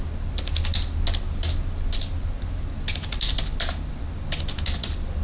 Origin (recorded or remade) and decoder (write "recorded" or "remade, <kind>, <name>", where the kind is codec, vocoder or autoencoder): recorded